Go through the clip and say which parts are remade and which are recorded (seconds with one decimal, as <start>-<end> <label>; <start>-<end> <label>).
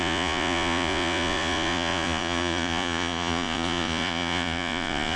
0.0-5.2 remade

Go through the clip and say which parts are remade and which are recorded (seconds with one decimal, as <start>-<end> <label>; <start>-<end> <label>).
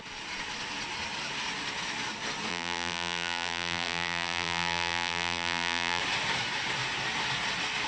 0.0-2.5 recorded; 2.5-6.0 remade; 6.0-7.9 recorded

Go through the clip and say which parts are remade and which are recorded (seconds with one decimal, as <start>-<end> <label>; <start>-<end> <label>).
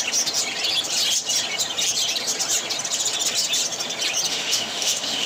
0.0-4.3 recorded; 4.3-5.3 remade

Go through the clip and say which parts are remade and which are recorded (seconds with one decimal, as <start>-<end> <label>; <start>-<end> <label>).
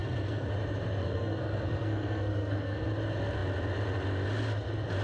0.0-0.5 remade; 0.5-1.0 recorded; 1.0-2.9 remade; 2.9-5.0 recorded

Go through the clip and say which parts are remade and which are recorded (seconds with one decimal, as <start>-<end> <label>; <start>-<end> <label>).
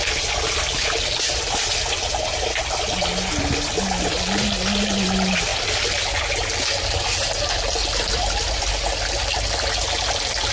0.0-7.8 recorded; 7.8-8.7 remade; 8.7-10.5 recorded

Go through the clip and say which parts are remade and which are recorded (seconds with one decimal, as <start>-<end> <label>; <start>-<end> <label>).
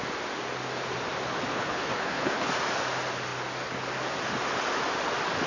0.0-1.5 recorded; 1.5-2.5 remade; 2.5-5.5 recorded